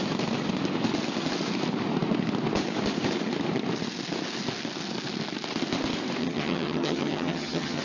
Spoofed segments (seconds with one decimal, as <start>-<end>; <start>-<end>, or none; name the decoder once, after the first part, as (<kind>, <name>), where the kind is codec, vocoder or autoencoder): 6.2-7.8 (vocoder, HiFi-GAN)